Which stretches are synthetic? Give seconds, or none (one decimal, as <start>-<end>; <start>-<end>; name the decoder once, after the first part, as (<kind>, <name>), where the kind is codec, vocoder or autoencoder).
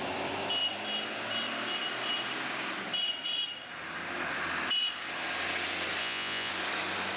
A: 6.0-6.5 (vocoder, Vocos)